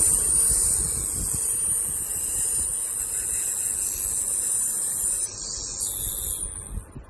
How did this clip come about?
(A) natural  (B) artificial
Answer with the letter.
A